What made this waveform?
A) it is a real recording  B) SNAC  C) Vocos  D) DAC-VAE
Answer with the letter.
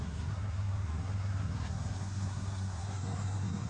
B